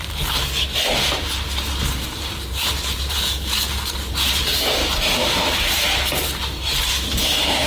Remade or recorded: remade